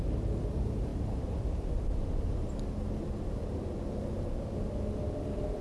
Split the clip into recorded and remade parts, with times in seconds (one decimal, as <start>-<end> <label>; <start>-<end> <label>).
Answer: 0.0-5.6 recorded